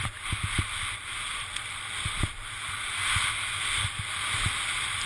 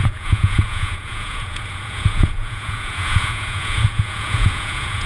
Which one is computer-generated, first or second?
second